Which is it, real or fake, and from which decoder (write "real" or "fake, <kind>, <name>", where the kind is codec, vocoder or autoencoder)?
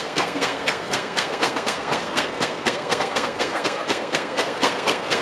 fake, codec, SNAC